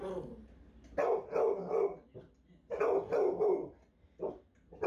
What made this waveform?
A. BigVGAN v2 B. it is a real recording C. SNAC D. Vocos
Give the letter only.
B